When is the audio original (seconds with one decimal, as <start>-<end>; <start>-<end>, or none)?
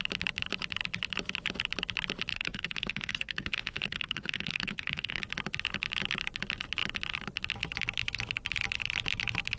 0.0-2.3; 5.2-9.6